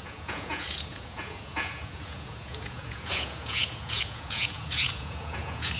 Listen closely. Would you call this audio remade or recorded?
remade